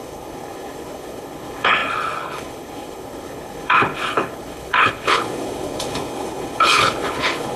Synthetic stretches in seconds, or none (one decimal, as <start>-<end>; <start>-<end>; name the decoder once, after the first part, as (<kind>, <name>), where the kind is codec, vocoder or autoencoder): 0.0-7.6 (codec, HILCodec)